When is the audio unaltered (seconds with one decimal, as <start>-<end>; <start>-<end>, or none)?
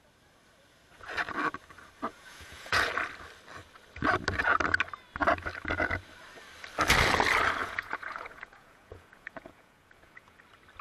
0.0-2.1; 2.9-7.6; 10.4-10.8